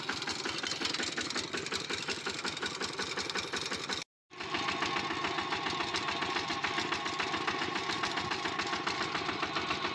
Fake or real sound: real